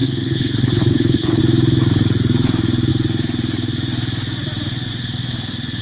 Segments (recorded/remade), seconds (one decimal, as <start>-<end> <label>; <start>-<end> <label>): 0.0-1.4 remade; 1.4-5.8 recorded